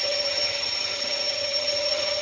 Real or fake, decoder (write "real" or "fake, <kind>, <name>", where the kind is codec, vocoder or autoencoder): fake, vocoder, HiFi-GAN